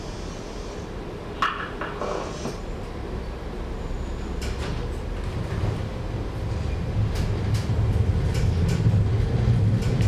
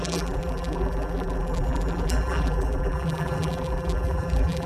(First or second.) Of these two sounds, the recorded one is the first